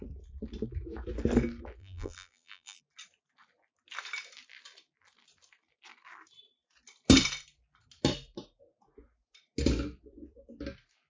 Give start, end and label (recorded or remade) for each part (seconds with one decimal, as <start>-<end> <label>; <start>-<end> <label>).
0.0-1.8 recorded; 1.8-2.8 remade; 2.8-11.1 recorded

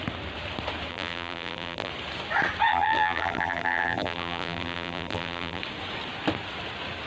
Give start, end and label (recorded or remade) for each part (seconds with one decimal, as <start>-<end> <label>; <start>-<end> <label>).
0.0-0.9 recorded; 0.9-1.9 remade; 1.9-2.7 recorded; 2.7-5.6 remade; 5.6-7.1 recorded

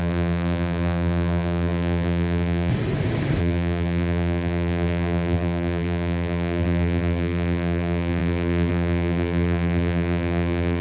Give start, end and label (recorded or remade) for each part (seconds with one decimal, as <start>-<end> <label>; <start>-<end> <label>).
0.0-2.7 remade; 2.7-3.4 recorded; 3.4-10.8 remade